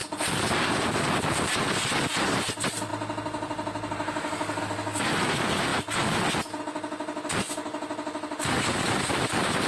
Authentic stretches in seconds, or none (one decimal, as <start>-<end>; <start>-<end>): 0.0-9.7